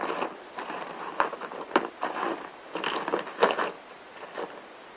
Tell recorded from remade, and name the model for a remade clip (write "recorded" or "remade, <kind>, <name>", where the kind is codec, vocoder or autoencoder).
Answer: recorded